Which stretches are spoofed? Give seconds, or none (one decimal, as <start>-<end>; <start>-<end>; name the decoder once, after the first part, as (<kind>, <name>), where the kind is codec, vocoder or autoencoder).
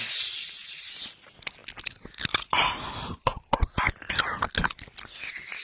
none